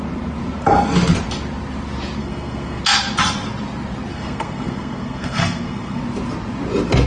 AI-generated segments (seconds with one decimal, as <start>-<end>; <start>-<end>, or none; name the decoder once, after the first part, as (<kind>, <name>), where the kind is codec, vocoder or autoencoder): 2.2-2.8 (codec, SNAC); 4.1-6.0